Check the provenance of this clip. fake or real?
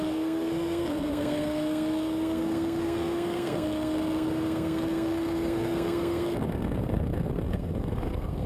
fake